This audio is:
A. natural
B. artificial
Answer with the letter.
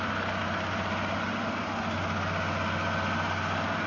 A